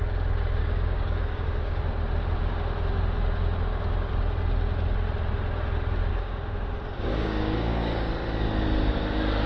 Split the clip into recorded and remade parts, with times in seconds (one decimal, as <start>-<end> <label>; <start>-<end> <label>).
0.0-0.6 recorded; 0.6-1.8 remade; 1.8-6.1 recorded; 6.1-8.1 remade; 8.1-9.5 recorded